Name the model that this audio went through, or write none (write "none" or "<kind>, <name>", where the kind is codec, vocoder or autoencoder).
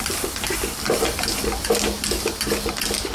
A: none